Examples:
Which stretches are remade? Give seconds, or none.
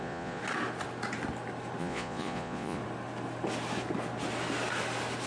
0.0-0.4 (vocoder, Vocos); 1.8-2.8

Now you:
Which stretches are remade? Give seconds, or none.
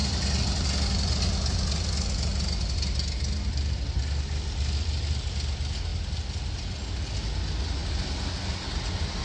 none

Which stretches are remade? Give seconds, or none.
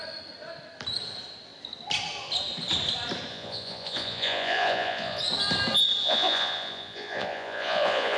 3.3-5.2 (vocoder, Vocos); 6.0-8.2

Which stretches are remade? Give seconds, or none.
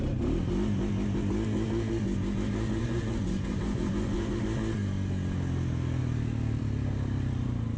2.8-4.4 (vocoder, Vocos)